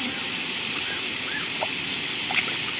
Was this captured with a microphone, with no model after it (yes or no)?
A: yes